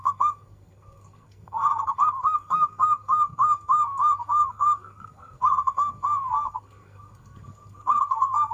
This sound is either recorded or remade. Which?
remade